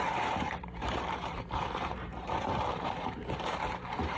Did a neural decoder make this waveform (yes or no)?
yes